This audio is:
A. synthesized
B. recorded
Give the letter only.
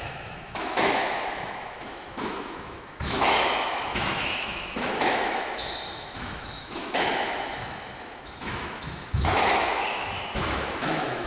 A